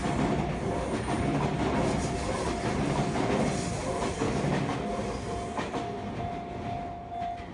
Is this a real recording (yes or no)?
yes